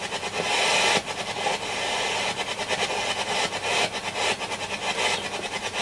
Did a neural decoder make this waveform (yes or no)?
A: no